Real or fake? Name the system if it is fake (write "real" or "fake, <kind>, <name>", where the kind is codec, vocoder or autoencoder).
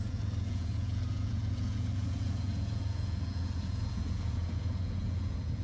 fake, vocoder, Vocos